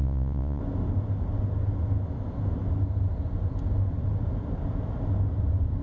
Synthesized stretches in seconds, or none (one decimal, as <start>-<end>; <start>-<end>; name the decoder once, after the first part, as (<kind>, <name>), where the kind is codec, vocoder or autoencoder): 0.0-0.6 (vocoder, Vocos)